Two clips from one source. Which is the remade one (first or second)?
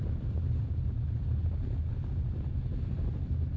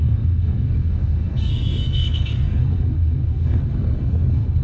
second